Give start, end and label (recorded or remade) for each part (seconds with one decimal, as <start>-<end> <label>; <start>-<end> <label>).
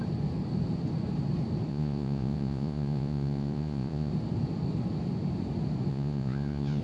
0.0-1.7 recorded; 1.7-4.1 remade; 4.1-5.9 recorded; 5.9-6.8 remade